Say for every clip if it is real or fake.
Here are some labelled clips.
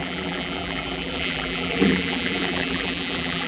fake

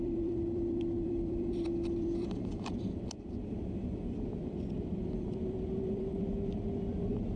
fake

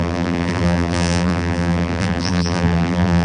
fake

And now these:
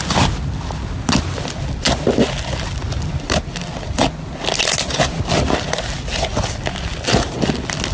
real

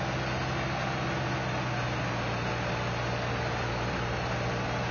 real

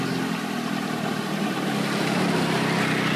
real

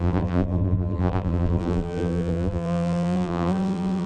fake